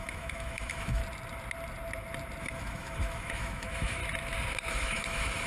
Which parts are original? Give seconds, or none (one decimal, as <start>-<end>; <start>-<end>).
1.0-2.4; 4.0-4.7